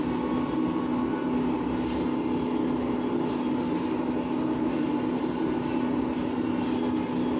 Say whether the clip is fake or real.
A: real